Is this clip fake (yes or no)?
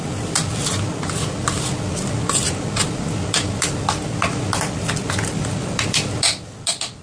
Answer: no